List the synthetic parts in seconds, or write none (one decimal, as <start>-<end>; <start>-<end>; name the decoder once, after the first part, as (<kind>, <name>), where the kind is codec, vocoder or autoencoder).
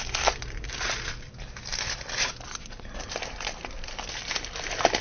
0.0-5.0 (vocoder, BigVGAN v2)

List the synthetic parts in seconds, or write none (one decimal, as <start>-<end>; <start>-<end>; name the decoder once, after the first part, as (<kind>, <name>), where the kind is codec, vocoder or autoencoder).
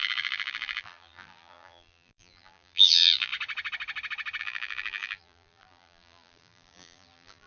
0.0-3.3 (vocoder, BigVGAN v2); 4.4-7.5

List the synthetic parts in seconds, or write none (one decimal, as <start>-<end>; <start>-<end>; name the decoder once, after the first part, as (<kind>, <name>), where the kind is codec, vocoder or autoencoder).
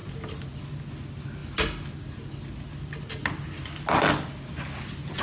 none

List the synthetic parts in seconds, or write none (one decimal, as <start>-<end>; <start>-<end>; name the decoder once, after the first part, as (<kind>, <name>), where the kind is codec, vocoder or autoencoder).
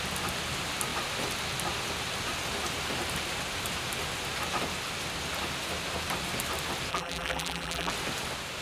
6.9-7.9 (vocoder, BigVGAN v2)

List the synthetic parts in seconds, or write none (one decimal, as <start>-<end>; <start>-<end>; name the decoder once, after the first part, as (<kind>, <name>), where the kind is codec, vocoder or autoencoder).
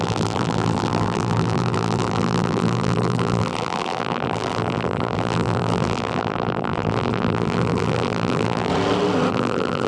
0.0-8.7 (vocoder, BigVGAN v2); 9.3-9.9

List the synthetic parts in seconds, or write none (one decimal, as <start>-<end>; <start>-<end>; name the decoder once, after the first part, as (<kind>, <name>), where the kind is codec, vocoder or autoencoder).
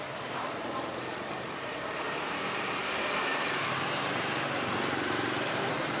0.0-2.8 (vocoder, BigVGAN v2); 3.7-6.0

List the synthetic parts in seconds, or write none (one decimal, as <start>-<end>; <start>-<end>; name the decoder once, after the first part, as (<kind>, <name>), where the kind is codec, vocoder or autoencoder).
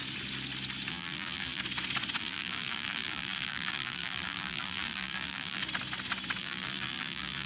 0.9-1.6 (vocoder, BigVGAN v2); 2.2-5.6; 6.4-7.5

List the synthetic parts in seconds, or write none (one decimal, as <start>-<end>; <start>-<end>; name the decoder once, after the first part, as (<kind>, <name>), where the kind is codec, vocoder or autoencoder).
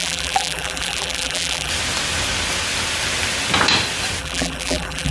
0.0-1.7 (vocoder, BigVGAN v2); 4.2-5.1